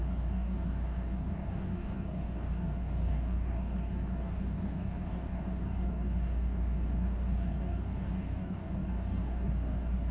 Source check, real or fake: fake